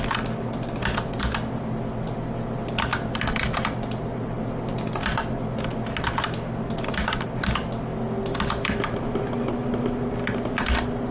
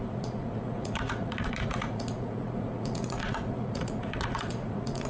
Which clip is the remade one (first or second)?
second